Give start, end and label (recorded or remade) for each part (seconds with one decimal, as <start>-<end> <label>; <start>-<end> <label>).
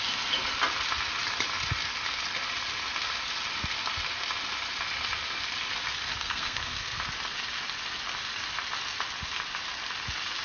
0.0-6.1 recorded; 6.1-7.0 remade; 7.0-10.4 recorded